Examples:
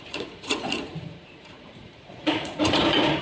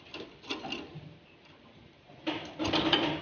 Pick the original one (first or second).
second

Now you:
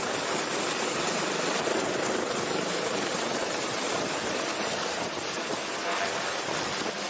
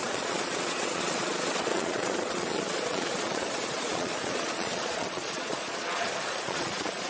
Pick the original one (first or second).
first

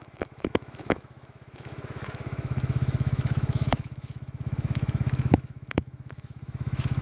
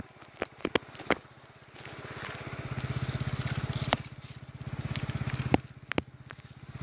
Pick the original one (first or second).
second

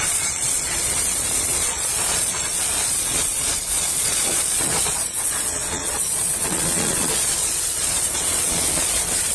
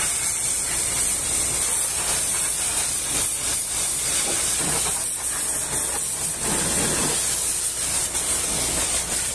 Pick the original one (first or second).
second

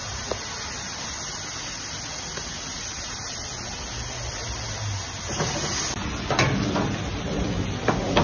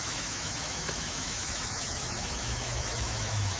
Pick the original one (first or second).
first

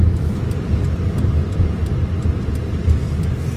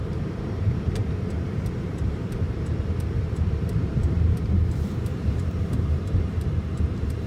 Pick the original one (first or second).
first